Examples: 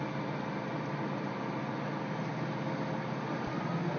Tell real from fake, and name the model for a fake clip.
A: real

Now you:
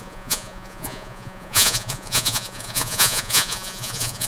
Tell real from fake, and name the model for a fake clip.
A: fake, vocoder, Vocos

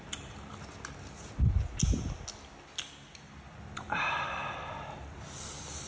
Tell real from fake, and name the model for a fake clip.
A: real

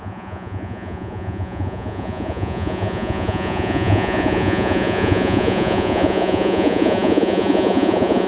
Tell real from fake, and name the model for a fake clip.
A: fake, vocoder, Vocos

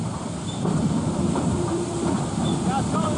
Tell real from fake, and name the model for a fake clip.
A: fake, vocoder, BigVGAN v2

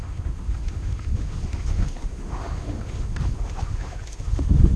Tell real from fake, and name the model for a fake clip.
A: fake, autoencoder, DAC-VAE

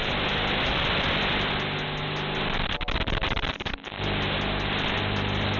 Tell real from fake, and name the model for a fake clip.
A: real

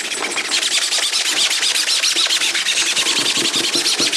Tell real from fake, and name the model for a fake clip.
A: real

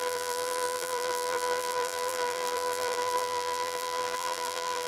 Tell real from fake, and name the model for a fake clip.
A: fake, vocoder, BigVGAN v2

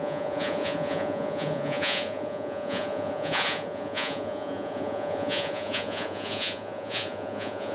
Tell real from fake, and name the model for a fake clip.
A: fake, vocoder, Vocos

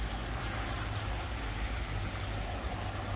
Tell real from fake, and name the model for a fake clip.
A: real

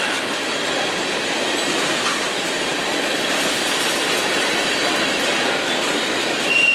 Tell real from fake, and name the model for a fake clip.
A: real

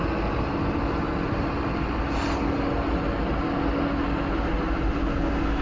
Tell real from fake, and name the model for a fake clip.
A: real